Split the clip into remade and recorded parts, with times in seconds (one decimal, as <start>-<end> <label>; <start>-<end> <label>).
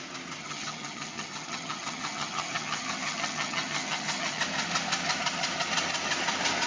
0.0-0.4 recorded; 0.4-4.4 remade; 4.4-6.7 recorded